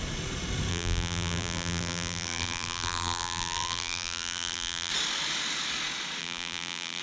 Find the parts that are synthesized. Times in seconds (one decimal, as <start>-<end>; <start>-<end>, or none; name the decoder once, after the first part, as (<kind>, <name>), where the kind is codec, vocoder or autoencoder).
0.7-4.9 (vocoder, BigVGAN v2); 6.2-7.0